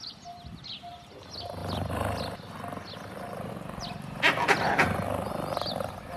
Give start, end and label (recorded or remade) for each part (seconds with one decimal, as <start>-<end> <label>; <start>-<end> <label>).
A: 0.0-6.2 recorded